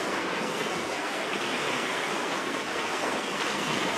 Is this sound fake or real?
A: fake